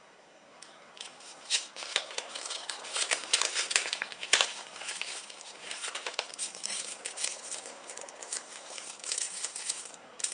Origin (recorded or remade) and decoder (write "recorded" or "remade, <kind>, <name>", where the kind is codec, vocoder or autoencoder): remade, codec, SNAC